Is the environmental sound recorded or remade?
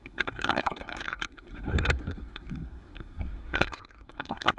remade